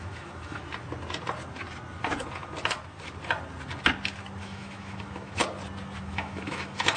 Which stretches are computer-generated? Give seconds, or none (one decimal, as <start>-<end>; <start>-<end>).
0.0-0.6; 4.4-5.4; 6.0-7.0